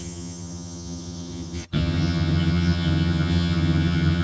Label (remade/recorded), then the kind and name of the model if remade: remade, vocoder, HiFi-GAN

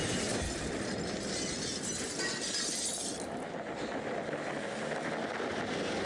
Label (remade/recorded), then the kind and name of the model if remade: recorded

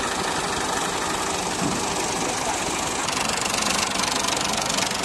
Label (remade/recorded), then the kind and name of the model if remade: recorded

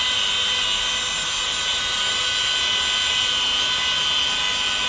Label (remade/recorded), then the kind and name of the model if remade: recorded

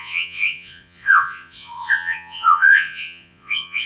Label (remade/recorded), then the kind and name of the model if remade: remade, vocoder, Vocos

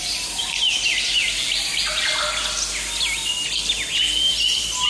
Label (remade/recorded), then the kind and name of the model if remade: recorded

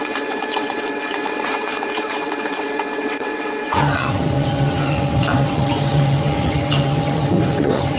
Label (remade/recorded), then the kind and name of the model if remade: remade, vocoder, WaveNeXt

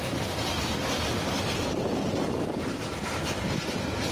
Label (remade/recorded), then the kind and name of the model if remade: recorded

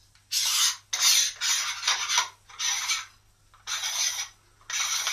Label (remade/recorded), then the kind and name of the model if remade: recorded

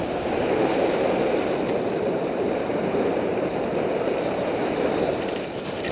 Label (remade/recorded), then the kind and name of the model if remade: remade, vocoder, BigVGAN v2